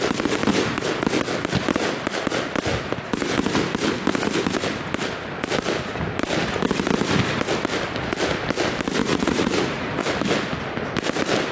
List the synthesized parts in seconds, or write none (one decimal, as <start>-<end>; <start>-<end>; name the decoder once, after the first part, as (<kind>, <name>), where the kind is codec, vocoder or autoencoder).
9.0-10.0 (vocoder, Vocos)